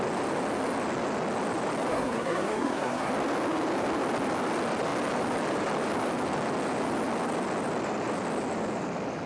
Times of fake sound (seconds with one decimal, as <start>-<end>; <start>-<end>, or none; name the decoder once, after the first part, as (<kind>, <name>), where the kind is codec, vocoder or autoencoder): 1.9-3.1 (codec, SNAC)